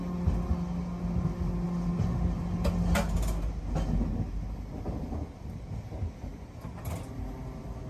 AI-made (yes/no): no